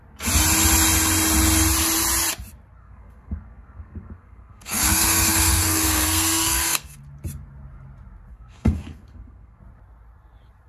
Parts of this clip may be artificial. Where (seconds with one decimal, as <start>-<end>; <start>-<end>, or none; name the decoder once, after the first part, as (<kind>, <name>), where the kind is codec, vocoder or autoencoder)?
2.8-7.0 (codec, SNAC); 8.3-9.6